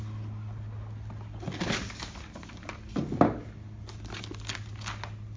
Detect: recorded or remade recorded